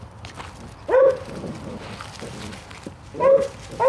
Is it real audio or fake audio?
real